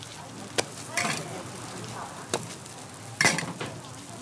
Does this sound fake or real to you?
real